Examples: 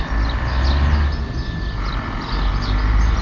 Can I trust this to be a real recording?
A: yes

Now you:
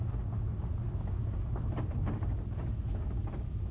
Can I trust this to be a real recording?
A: yes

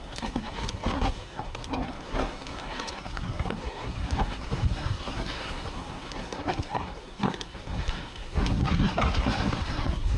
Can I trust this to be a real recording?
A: no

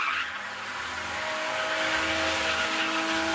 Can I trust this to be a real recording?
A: yes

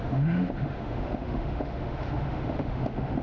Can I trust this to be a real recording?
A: no